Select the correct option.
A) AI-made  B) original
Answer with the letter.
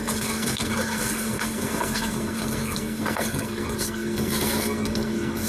A